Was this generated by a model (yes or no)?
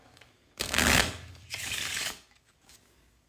yes